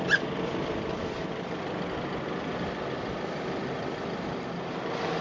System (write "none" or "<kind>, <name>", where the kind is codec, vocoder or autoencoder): none